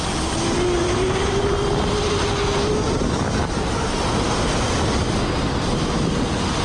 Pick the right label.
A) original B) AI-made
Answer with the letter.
A